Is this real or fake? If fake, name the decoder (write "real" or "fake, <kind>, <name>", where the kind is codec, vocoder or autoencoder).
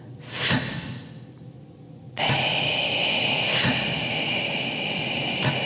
real